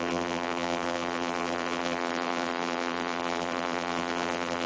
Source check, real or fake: fake